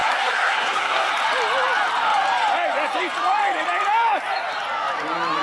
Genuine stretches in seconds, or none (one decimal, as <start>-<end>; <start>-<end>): 1.1-5.4